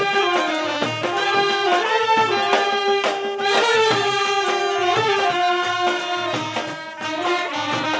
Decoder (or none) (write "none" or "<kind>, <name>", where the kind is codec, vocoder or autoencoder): none